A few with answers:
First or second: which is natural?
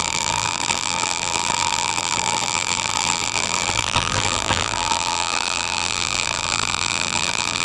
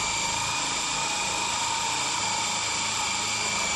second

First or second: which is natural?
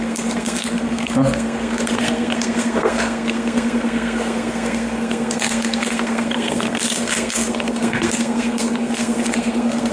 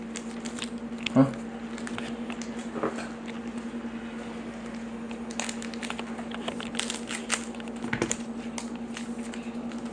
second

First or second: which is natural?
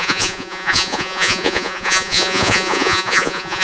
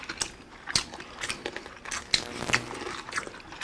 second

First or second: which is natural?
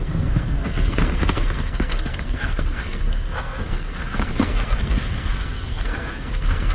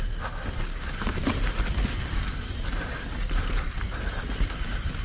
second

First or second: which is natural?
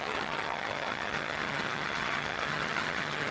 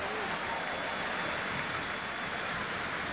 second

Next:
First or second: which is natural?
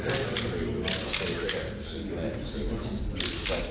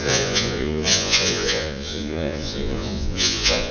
first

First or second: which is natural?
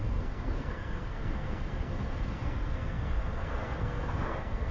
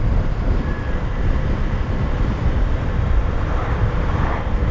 second